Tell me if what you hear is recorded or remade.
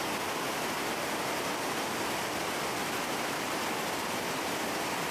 recorded